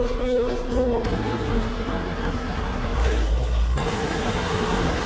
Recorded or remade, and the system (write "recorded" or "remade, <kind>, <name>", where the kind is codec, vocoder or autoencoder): remade, codec, SNAC